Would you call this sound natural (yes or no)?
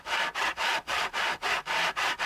yes